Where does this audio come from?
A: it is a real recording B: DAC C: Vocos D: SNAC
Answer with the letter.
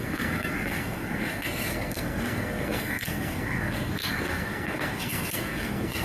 D